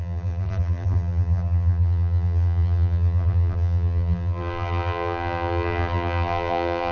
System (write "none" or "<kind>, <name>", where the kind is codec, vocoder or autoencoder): vocoder, BigVGAN v2